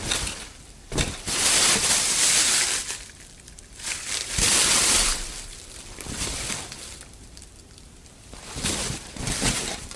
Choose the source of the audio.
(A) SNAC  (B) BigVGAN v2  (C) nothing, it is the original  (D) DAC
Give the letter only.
B